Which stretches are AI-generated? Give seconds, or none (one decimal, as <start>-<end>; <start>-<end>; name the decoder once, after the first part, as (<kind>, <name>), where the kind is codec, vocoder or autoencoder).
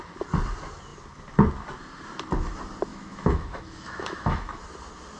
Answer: 2.9-4.6 (autoencoder, DAC-VAE)